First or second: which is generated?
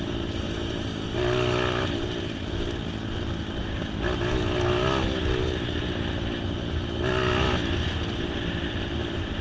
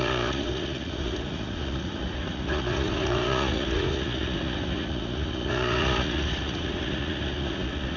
second